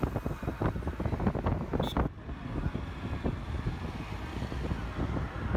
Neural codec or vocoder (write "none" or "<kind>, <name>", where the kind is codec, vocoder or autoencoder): none